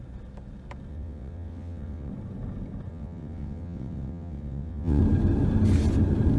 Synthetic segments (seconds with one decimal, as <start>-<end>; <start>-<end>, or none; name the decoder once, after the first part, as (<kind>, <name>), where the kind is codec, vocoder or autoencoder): 0.9-2.1 (vocoder, WaveNeXt); 2.9-5.0